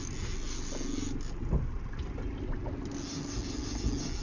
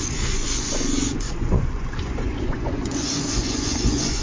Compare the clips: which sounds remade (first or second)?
second